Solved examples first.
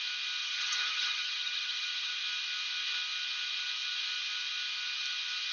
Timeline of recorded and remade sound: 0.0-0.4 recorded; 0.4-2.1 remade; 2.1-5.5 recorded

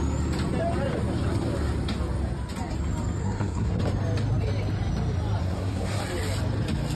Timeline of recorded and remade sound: 0.0-3.2 recorded; 3.2-3.8 remade; 3.8-5.4 recorded; 5.4-6.0 remade; 6.0-6.9 recorded

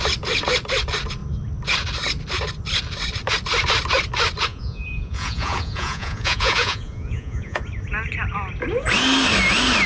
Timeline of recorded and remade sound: 0.0-4.5 recorded; 4.5-7.6 remade; 7.6-9.9 recorded

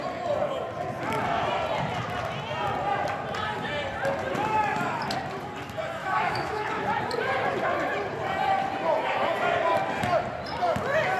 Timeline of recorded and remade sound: 0.0-6.0 recorded; 6.0-6.7 remade; 6.7-11.2 recorded

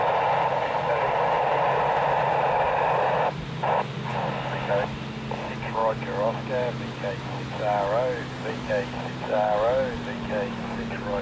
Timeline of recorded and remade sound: 0.0-11.2 recorded

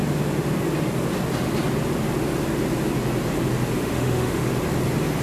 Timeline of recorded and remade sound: 0.0-3.8 recorded; 3.8-4.5 remade; 4.5-5.2 recorded

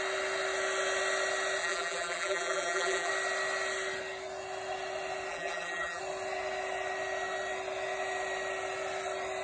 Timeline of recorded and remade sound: 0.0-1.6 recorded; 1.6-3.1 remade; 3.1-5.3 recorded; 5.3-6.0 remade; 6.0-9.4 recorded

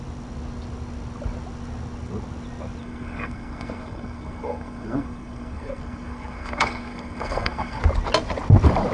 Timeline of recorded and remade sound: 0.0-2.8 recorded; 2.8-7.8 remade; 7.8-8.9 recorded